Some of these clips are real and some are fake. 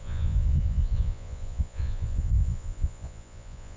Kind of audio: fake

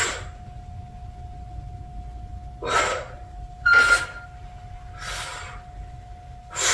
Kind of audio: real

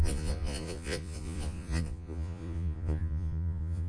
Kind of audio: fake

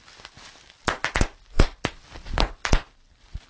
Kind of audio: real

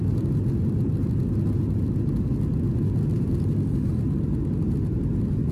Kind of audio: real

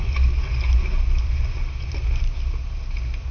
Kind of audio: real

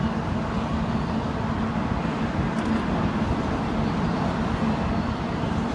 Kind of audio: real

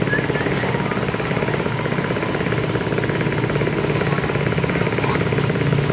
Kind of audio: real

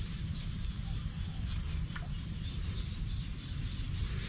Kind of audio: real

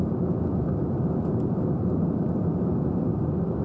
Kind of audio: real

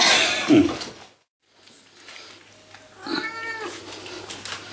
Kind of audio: real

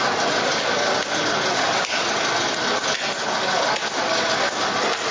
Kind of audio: real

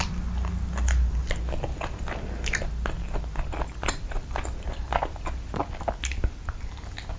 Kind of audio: real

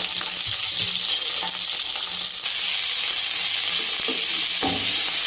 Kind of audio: real